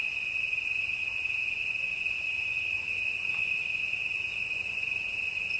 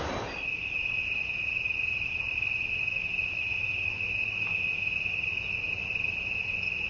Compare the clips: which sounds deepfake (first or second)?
first